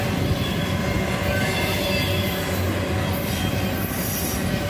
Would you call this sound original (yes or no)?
yes